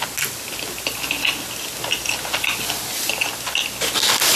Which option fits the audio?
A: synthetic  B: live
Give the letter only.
B